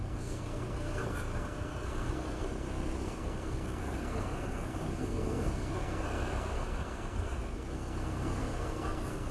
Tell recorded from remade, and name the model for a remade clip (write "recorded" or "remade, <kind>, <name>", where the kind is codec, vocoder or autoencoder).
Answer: remade, codec, SNAC